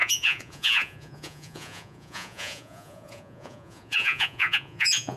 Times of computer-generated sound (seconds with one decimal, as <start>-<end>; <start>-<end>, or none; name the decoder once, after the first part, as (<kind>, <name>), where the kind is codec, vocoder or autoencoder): 0.0-5.2 (vocoder, Vocos)